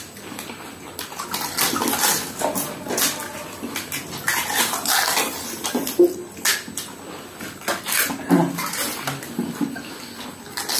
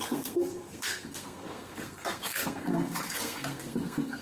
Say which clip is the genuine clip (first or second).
first